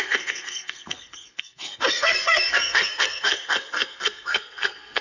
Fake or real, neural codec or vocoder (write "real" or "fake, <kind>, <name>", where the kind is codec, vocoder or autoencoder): fake, codec, SNAC